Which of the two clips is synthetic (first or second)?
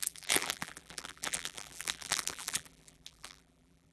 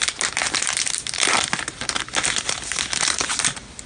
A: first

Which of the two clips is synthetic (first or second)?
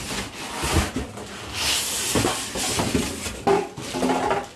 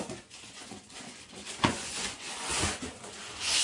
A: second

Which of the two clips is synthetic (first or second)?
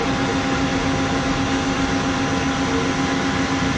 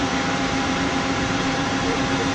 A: second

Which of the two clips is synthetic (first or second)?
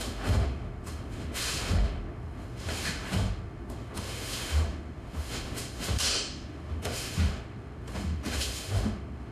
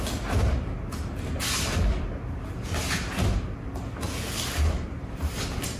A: first